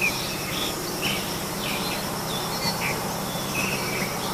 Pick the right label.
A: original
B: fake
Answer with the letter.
B